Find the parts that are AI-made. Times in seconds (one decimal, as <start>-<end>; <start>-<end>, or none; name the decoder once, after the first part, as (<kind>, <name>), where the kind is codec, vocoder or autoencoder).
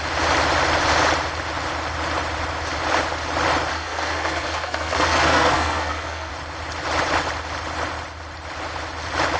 3.7-6.3 (codec, SNAC)